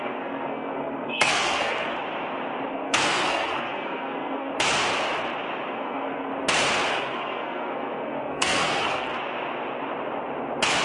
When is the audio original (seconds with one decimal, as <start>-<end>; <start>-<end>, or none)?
1.9-2.7; 4.5-5.7; 6.3-6.9; 9.1-10.8